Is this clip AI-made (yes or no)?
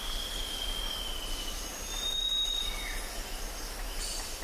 no